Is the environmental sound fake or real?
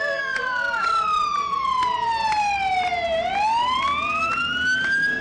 real